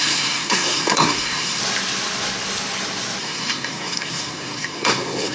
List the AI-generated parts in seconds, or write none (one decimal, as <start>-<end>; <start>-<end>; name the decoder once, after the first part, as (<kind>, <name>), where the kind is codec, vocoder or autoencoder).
0.0-1.6 (codec, SNAC); 3.2-5.3

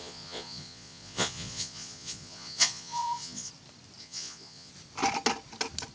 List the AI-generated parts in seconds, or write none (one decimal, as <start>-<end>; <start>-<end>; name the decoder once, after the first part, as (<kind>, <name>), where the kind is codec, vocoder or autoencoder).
0.0-3.5 (vocoder, Vocos); 4.0-4.7

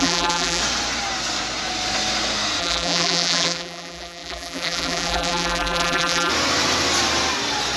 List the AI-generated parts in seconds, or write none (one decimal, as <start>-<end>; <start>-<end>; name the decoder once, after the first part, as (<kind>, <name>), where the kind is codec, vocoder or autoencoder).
0.0-0.6 (vocoder, BigVGAN v2); 2.6-6.3

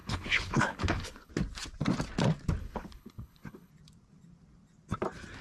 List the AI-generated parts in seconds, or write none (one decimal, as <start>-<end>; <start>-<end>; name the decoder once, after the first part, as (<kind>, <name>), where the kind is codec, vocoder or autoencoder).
0.0-1.3 (codec, HILCodec); 2.6-3.7

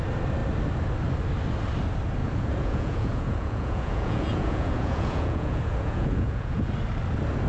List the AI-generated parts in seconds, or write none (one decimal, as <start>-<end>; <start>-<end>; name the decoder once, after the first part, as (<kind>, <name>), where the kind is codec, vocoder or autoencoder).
2.2-6.7 (vocoder, Vocos)